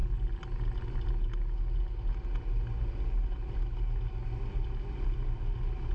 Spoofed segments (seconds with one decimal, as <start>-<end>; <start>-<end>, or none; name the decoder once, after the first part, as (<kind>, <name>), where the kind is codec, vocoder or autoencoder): none